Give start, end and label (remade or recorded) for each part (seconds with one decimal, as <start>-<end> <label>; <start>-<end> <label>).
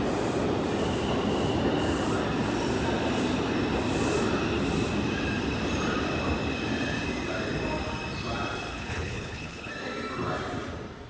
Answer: 0.0-8.7 recorded; 8.7-9.7 remade; 9.7-11.1 recorded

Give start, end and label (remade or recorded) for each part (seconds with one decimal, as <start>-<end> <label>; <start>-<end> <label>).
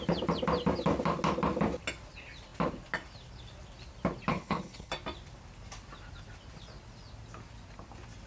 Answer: 0.0-4.3 recorded; 4.3-4.9 remade; 4.9-8.3 recorded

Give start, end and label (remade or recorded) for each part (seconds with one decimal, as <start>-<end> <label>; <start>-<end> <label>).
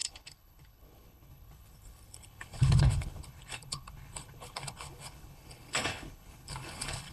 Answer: 0.0-7.1 remade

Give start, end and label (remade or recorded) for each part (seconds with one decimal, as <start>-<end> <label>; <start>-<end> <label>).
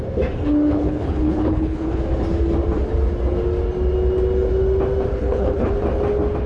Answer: 0.0-0.7 recorded; 0.7-2.0 remade; 2.0-5.1 recorded; 5.1-5.7 remade; 5.7-6.5 recorded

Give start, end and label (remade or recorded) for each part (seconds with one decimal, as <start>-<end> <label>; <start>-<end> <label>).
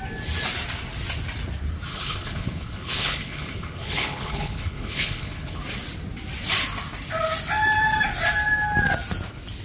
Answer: 0.0-1.9 recorded; 1.9-5.6 remade; 5.6-9.6 recorded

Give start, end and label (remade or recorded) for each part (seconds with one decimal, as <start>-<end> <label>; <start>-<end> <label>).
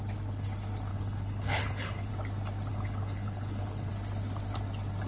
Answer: 0.0-0.9 recorded; 0.9-2.1 remade; 2.1-2.7 recorded; 2.7-3.9 remade; 3.9-5.1 recorded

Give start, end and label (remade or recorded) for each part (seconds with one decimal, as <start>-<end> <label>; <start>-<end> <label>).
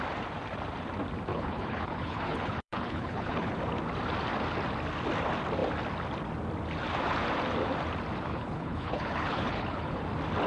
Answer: 0.0-1.3 recorded; 1.3-3.6 remade; 3.6-8.3 recorded; 8.3-10.0 remade; 10.0-10.5 recorded